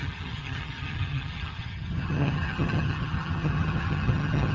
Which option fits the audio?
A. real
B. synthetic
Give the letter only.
B